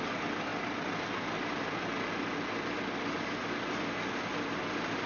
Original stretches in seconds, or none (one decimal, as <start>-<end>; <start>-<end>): 0.0-5.1